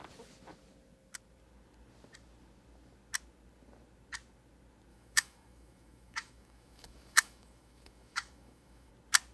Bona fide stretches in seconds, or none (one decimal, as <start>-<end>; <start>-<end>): 0.0-4.9; 8.9-9.3